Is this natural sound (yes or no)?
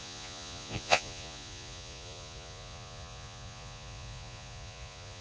no